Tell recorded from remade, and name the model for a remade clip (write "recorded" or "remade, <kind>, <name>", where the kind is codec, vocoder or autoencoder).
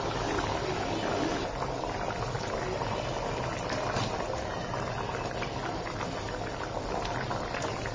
recorded